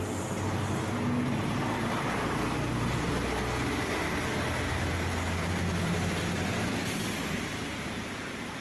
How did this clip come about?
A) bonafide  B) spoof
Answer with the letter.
A